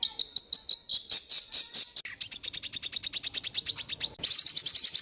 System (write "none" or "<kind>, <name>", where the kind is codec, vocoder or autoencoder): none